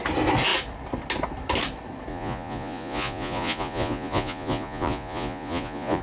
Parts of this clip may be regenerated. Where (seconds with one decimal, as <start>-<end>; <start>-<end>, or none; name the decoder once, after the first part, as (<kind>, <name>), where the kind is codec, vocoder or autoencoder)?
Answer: 2.1-6.0 (vocoder, Vocos)